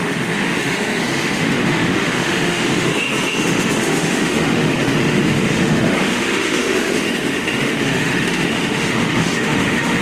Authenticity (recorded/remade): remade